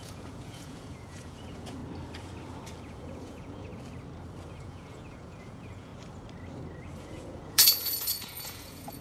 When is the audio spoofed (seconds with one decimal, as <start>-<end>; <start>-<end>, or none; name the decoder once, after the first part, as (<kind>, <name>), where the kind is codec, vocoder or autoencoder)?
0.0-1.8 (vocoder, Vocos); 2.8-3.7; 4.5-5.9; 7.0-9.0